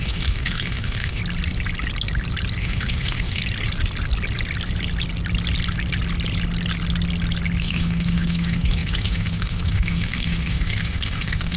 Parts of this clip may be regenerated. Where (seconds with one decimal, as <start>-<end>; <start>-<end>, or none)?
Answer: 0.0-1.2; 2.6-3.4; 7.6-11.6